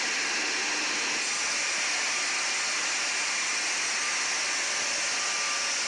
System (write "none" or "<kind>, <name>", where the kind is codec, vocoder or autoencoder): none